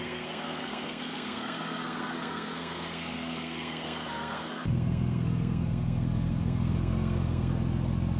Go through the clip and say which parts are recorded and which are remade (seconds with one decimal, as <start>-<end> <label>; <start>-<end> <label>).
0.0-7.5 remade; 7.5-8.2 recorded